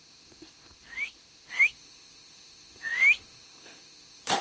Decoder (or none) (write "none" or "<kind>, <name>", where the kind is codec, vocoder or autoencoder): autoencoder, DAC-VAE